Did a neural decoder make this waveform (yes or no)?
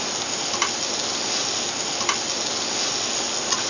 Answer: no